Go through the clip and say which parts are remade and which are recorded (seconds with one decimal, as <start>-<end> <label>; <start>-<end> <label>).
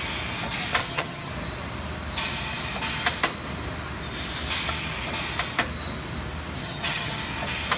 0.0-0.8 recorded; 0.8-1.3 remade; 1.3-6.6 recorded; 6.6-7.2 remade; 7.2-7.8 recorded